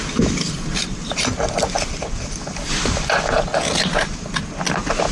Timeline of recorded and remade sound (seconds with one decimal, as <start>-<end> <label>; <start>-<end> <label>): 0.0-5.1 recorded